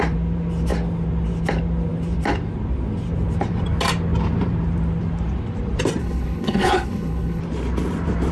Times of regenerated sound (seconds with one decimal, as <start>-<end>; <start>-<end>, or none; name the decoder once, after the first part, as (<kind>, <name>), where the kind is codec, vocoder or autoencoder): 6.0-7.4 (codec, HILCodec)